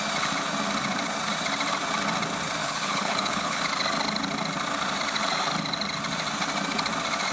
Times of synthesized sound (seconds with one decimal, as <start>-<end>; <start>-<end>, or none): 2.6-3.6